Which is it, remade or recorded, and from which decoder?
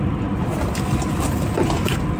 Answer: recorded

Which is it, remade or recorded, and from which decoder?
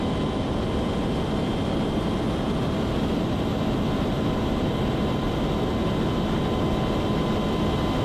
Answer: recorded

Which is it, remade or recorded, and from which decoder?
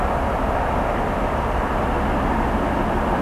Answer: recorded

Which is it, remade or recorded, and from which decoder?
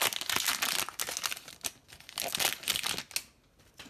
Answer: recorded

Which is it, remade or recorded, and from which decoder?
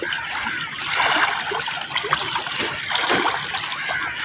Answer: remade, vocoder, BigVGAN v2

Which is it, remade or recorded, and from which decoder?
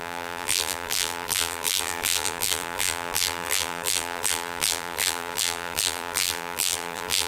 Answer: remade, vocoder, BigVGAN v2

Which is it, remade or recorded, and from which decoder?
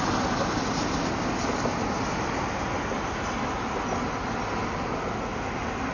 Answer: recorded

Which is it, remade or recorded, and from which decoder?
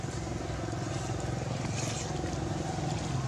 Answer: recorded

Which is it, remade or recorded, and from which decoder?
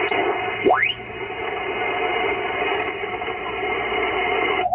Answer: remade, vocoder, BigVGAN v2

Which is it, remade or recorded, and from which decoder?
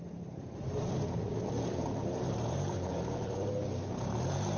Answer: remade, vocoder, BigVGAN v2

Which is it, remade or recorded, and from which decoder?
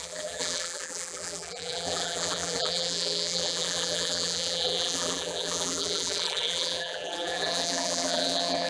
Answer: remade, vocoder, BigVGAN v2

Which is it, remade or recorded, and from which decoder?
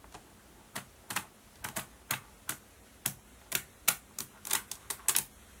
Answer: recorded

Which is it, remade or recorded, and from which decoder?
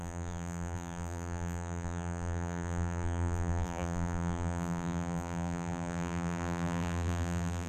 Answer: remade, vocoder, BigVGAN v2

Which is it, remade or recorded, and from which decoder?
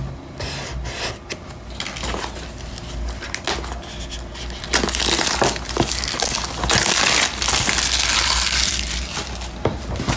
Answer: recorded